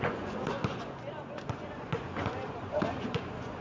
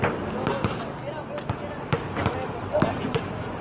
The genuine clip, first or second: second